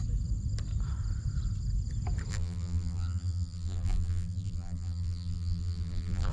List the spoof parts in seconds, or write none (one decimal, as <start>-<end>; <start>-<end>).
2.3-6.3